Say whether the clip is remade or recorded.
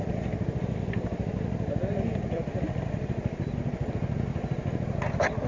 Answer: recorded